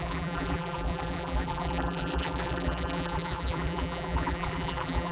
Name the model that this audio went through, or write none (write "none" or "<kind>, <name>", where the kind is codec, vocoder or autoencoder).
vocoder, BigVGAN v2